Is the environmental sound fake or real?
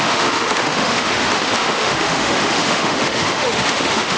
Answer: fake